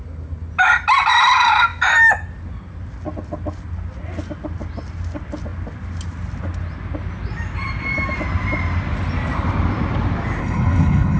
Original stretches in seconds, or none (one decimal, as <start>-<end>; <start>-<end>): 0.0-10.4